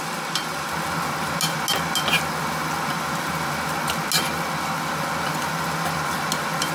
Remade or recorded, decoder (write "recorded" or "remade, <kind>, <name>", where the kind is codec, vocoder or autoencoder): recorded